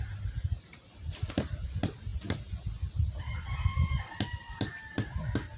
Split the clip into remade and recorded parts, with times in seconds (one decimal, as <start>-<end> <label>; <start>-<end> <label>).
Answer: 0.0-5.6 recorded